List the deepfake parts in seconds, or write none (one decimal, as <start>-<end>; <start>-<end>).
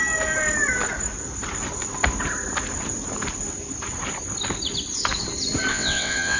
5.7-6.4